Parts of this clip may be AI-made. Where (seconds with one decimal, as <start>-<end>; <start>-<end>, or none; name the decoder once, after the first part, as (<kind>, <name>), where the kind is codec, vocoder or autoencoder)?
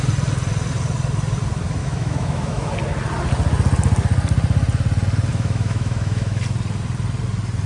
1.8-2.7 (autoencoder, DAC-VAE); 5.3-6.4